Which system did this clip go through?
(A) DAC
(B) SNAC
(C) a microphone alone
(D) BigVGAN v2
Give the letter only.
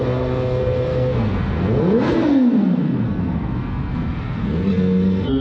B